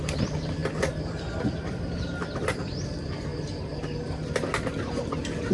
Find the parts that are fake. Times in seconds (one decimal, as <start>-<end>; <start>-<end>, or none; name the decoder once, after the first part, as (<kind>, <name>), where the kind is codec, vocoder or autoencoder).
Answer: 0.0-3.3 (vocoder, BigVGAN v2); 4.1-5.5